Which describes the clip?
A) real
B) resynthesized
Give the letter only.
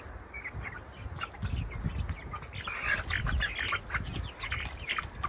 A